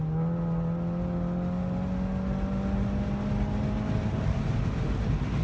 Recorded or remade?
recorded